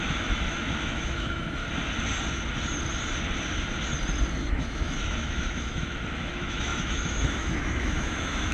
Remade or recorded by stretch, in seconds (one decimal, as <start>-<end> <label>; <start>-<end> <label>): 0.0-1.6 remade; 1.6-4.5 recorded; 4.5-8.5 remade